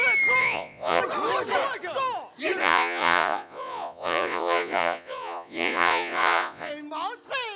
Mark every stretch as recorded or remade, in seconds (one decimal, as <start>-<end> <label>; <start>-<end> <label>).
0.0-0.4 recorded; 0.4-1.0 remade; 1.0-2.6 recorded; 2.6-6.7 remade; 6.7-7.6 recorded